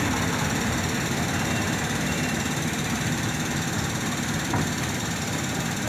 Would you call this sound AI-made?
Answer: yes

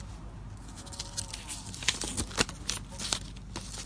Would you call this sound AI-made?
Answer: no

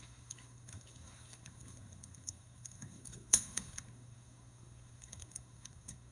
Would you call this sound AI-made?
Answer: yes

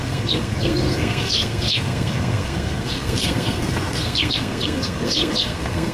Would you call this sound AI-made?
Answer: yes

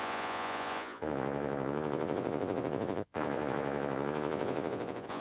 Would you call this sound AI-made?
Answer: yes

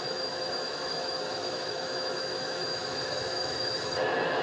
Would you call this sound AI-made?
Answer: yes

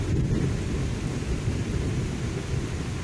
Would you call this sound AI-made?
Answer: no